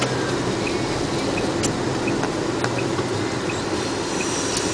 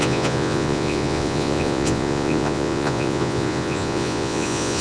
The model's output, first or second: second